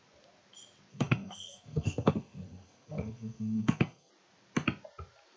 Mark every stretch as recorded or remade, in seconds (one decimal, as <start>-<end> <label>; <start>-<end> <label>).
0.0-0.9 recorded; 0.9-4.1 remade; 4.1-5.4 recorded